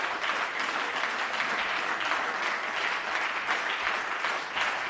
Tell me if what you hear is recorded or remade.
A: recorded